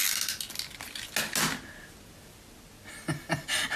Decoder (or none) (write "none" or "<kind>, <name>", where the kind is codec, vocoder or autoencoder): none